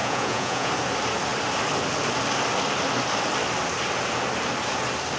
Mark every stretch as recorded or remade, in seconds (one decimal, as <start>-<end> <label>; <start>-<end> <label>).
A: 0.0-0.7 remade; 0.7-5.2 recorded